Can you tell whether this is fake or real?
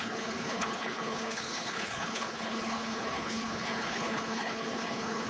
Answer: fake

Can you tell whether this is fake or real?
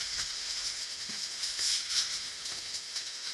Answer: fake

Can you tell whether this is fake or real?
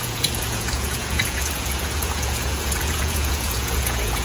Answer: fake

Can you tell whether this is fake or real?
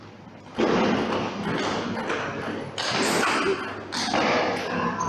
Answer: real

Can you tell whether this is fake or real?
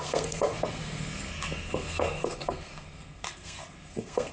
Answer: fake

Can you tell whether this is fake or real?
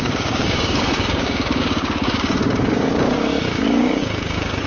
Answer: fake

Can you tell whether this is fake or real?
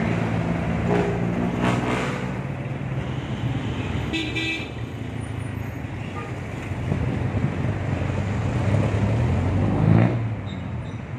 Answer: real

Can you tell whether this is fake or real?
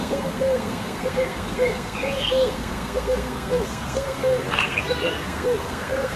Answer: fake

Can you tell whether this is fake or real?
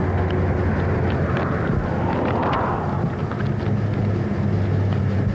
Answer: real